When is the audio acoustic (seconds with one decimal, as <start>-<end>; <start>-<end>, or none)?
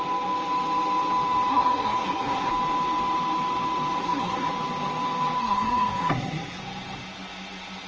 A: 0.0-1.5; 2.5-4.0; 4.5-5.4; 6.6-7.9